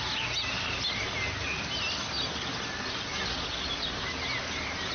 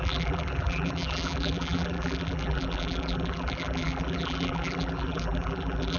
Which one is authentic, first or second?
first